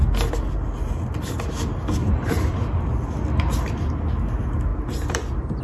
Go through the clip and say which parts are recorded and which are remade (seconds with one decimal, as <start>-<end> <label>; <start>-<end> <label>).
0.0-2.0 recorded; 2.0-2.7 remade; 2.7-4.7 recorded; 4.7-5.6 remade